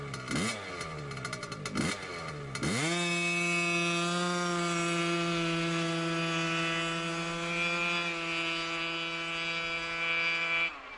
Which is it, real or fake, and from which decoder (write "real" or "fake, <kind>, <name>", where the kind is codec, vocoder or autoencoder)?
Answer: real